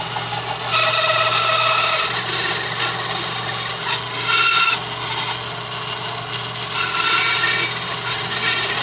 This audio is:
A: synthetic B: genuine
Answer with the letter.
B